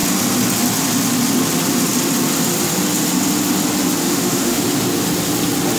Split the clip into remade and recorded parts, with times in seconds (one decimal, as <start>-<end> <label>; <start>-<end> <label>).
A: 0.0-4.0 recorded; 4.0-4.6 remade; 4.6-5.8 recorded